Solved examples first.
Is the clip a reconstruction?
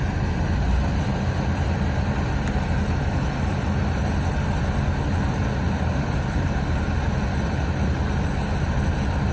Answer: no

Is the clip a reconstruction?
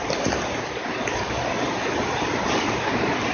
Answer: no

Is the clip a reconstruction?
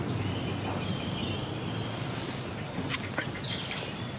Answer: no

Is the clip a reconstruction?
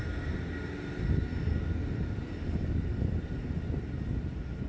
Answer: no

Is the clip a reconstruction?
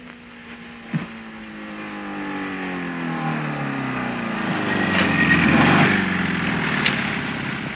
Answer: no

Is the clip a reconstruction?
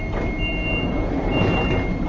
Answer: no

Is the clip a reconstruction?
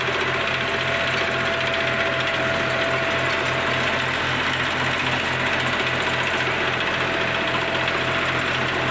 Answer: no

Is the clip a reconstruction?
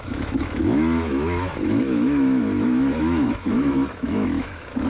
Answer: yes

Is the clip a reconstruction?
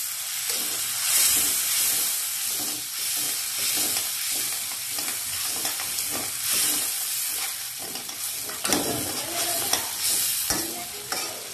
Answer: no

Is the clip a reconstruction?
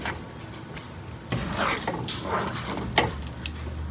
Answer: no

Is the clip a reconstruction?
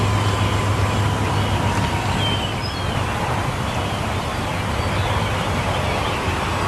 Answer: no